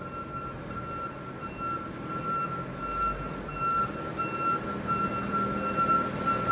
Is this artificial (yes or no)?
no